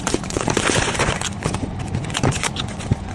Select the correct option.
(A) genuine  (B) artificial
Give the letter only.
B